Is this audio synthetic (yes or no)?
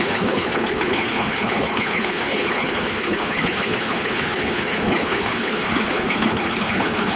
yes